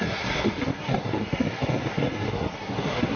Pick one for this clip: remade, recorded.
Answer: remade